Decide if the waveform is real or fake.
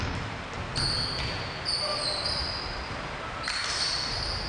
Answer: real